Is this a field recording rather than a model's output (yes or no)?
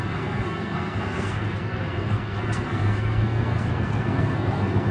no